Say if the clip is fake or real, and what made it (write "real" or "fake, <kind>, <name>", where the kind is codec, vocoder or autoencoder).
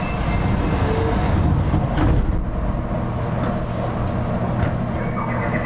real